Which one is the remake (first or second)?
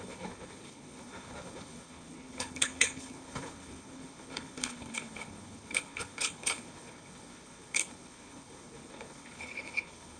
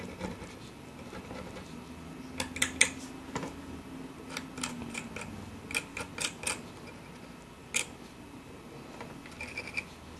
first